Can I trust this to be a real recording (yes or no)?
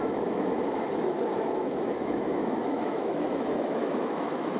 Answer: no